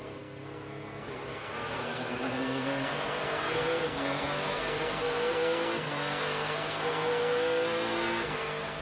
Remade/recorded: remade